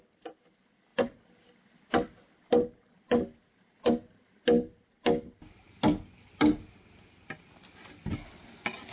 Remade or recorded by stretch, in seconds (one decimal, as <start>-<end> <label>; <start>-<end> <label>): 0.0-8.9 recorded